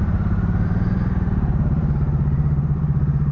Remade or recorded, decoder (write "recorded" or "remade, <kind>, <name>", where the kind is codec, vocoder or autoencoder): remade, vocoder, BigVGAN v2